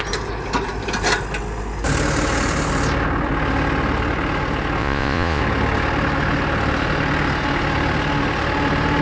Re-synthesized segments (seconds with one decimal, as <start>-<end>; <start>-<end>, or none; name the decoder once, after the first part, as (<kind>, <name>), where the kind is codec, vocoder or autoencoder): 4.8-5.4 (vocoder, Vocos)